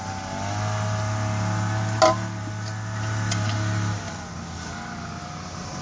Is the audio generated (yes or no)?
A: no